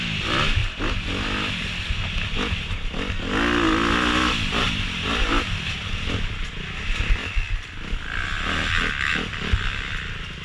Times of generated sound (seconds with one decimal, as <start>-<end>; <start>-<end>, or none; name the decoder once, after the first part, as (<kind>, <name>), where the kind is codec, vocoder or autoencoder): none

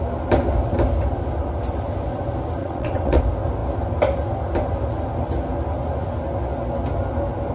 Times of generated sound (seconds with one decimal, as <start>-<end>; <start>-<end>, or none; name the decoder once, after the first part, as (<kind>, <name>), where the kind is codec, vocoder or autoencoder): 2.6-3.2 (vocoder, WaveNeXt)

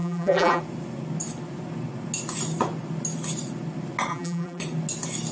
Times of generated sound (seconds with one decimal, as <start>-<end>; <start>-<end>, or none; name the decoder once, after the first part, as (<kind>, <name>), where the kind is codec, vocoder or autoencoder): 0.0-0.6 (vocoder, BigVGAN v2); 4.1-4.6

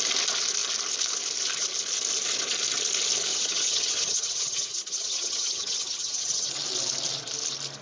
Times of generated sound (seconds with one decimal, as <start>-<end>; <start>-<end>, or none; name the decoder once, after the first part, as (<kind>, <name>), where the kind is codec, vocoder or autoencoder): 3.3-6.5 (vocoder, HiFi-GAN)